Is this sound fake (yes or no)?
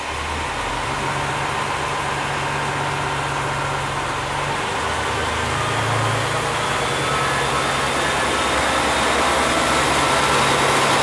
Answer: no